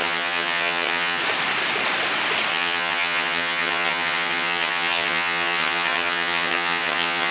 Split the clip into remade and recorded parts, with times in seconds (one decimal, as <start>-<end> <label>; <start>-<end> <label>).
0.0-1.2 remade; 1.2-2.5 recorded; 2.5-7.3 remade